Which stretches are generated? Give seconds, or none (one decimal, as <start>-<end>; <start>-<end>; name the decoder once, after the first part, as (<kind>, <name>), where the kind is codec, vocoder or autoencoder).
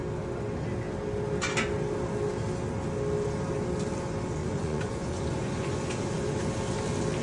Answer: 4.4-6.4 (vocoder, Vocos)